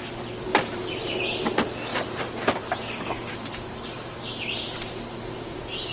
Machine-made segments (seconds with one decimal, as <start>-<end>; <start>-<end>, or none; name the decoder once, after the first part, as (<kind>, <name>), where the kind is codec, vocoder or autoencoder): 0.5-1.2 (vocoder, BigVGAN v2); 1.9-3.7